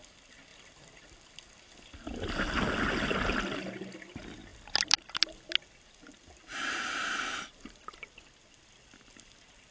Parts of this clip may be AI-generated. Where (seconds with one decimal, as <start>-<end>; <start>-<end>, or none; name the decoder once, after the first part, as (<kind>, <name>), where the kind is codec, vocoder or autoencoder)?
none